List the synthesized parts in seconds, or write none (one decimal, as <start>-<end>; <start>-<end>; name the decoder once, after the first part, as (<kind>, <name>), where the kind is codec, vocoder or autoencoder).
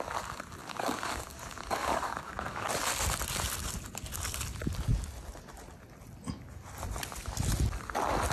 0.6-2.7 (codec, DAC)